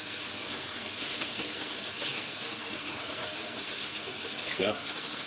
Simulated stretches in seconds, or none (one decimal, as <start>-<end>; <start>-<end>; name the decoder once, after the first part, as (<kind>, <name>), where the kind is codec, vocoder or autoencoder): 0.0-5.3 (codec, SNAC)